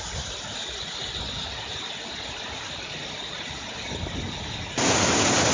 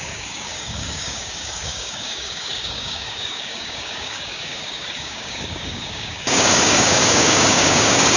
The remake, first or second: second